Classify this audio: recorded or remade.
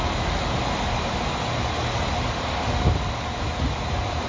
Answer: recorded